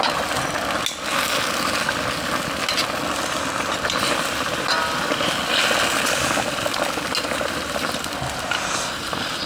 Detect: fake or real real